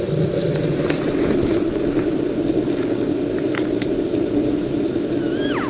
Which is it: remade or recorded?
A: recorded